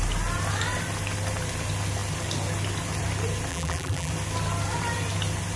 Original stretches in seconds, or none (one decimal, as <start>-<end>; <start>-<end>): 0.0-3.5; 4.1-5.6